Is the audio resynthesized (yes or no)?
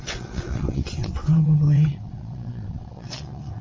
yes